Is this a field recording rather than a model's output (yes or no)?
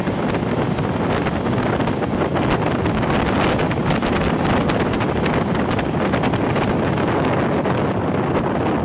yes